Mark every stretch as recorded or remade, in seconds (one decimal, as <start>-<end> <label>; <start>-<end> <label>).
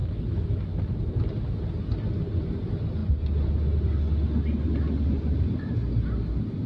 0.0-1.0 remade; 1.0-6.7 recorded